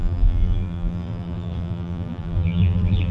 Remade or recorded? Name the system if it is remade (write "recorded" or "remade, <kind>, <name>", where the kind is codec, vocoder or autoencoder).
remade, vocoder, BigVGAN v2